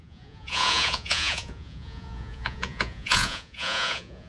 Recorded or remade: remade